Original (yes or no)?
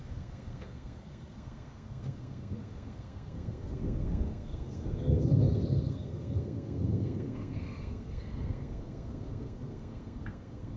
no